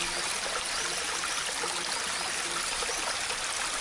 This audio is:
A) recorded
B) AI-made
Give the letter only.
A